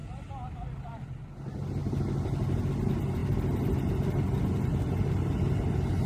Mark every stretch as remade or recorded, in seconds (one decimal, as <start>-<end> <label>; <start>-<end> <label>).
0.0-6.1 recorded